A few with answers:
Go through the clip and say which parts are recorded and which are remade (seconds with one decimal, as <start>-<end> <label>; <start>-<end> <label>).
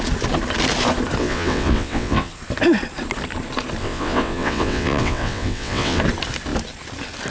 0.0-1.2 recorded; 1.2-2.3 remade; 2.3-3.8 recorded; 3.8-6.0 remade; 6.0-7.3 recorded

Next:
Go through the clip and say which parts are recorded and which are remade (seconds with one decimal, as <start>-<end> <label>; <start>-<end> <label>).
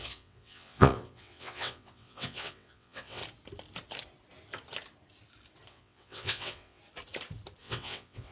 0.0-3.2 remade; 3.2-5.7 recorded; 5.7-6.8 remade; 6.8-7.6 recorded; 7.6-8.3 remade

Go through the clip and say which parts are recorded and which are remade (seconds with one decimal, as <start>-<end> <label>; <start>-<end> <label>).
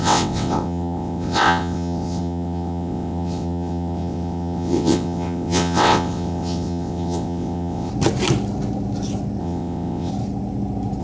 0.0-7.9 remade; 7.9-9.4 recorded; 9.4-10.1 remade; 10.1-11.0 recorded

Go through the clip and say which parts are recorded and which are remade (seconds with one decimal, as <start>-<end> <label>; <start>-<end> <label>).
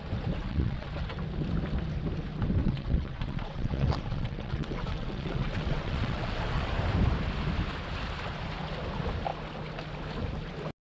0.0-0.4 recorded; 0.4-0.9 remade; 0.9-2.6 recorded; 2.6-6.7 remade; 6.7-10.8 recorded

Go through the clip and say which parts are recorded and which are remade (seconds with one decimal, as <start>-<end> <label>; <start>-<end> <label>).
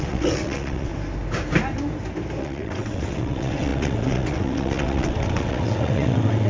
0.0-0.9 remade; 0.9-2.4 recorded; 2.4-6.5 remade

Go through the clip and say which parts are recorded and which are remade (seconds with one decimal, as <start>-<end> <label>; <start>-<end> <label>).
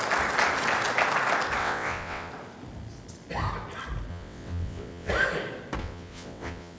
0.0-1.6 recorded; 1.6-2.3 remade; 2.3-4.1 recorded; 4.1-5.1 remade; 5.1-5.8 recorded; 5.8-6.8 remade